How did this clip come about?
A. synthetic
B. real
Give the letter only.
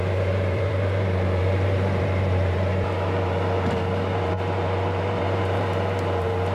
A